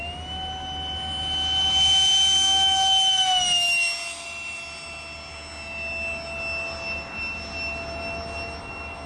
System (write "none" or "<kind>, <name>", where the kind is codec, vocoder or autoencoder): none